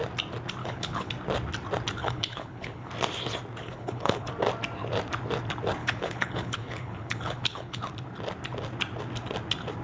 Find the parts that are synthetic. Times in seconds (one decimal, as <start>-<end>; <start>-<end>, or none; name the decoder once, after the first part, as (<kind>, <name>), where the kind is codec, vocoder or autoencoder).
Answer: 0.6-1.1 (codec, HILCodec); 2.0-2.9; 3.6-4.3; 5.8-7.8